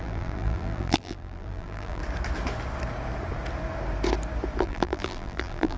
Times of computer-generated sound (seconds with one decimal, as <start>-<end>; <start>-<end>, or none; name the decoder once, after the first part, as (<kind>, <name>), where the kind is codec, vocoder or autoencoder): 0.0-2.0 (vocoder, BigVGAN v2); 4.6-5.8